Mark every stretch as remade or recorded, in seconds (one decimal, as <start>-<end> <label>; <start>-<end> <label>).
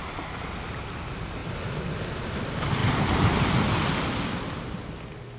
0.0-5.4 recorded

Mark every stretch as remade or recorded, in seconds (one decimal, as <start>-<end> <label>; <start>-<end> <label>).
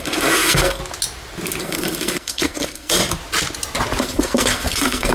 0.0-0.8 remade; 0.8-1.6 recorded; 1.6-3.0 remade; 3.0-4.0 recorded; 4.0-5.1 remade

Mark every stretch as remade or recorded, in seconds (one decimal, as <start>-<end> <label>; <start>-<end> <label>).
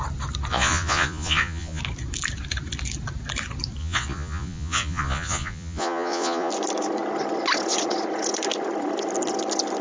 0.0-0.5 recorded; 0.5-1.8 remade; 1.8-3.8 recorded; 3.8-6.5 remade; 6.5-9.8 recorded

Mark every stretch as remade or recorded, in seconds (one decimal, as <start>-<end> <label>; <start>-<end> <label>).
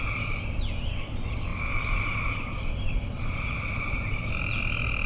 0.0-1.5 recorded; 1.5-4.6 remade; 4.6-5.1 recorded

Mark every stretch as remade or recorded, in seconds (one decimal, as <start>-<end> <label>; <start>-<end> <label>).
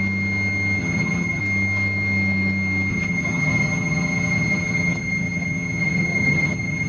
0.0-0.8 recorded; 0.8-1.4 remade; 1.4-2.9 recorded; 2.9-6.9 remade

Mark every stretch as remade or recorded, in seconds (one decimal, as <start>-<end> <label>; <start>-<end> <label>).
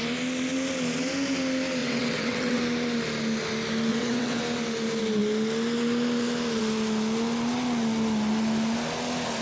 0.0-1.8 recorded; 1.8-2.6 remade; 2.6-3.9 recorded; 3.9-4.4 remade; 4.4-9.4 recorded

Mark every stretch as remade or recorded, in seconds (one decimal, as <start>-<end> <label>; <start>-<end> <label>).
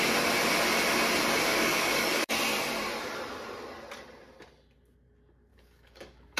0.0-1.5 recorded; 1.5-2.4 remade; 2.4-5.5 recorded; 5.5-6.4 remade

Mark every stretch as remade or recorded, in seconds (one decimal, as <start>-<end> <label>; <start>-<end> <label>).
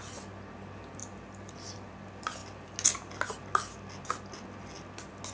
0.0-1.0 recorded; 1.0-1.9 remade; 1.9-5.3 recorded